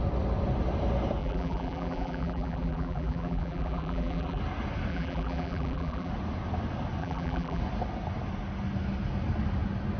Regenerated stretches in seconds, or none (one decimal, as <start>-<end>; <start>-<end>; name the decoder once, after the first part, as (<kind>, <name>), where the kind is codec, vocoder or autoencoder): 1.2-4.4 (vocoder, BigVGAN v2); 4.9-6.1; 7.0-7.6